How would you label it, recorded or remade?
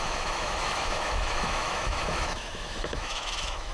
remade